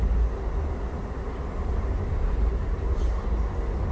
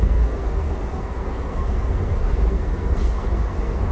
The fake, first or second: second